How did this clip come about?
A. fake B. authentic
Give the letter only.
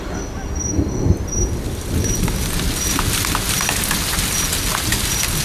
B